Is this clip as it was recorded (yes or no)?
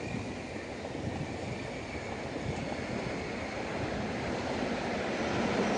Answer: yes